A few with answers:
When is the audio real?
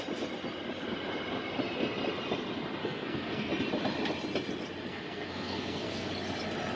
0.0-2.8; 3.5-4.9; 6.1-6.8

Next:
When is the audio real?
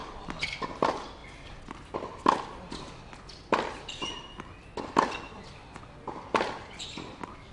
0.0-7.5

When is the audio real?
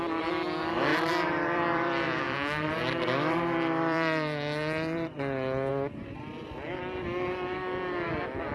0.0-0.9; 5.7-8.5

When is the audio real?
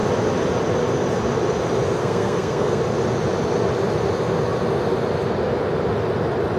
0.0-2.0; 2.8-6.6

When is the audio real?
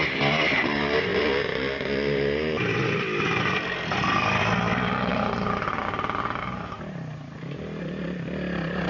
0.0-5.1; 6.7-8.9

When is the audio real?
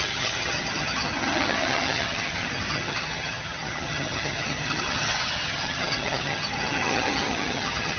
none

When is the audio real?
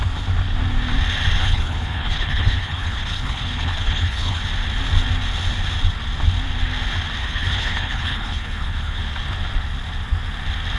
0.0-1.4; 4.4-7.2; 9.0-10.8